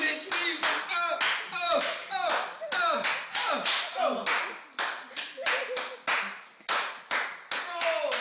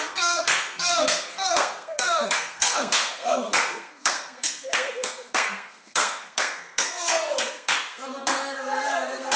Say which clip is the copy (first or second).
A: second